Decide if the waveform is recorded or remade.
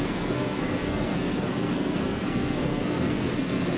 remade